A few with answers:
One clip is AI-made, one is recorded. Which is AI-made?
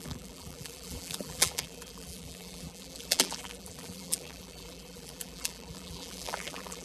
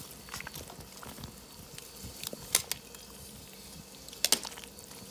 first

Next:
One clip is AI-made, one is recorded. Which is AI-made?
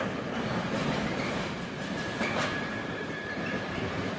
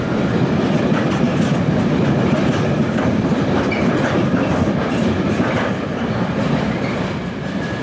second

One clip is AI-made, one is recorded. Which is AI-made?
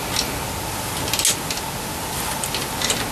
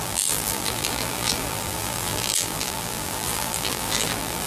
second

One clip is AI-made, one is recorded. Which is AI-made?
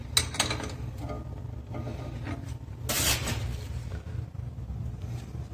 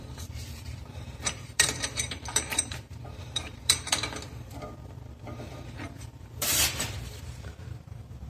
second